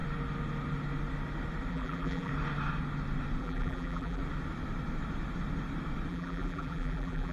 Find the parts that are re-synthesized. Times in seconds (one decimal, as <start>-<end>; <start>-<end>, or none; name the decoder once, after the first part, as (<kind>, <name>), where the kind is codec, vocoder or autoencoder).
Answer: 1.7-2.3 (vocoder, BigVGAN v2); 3.4-4.2; 6.1-7.3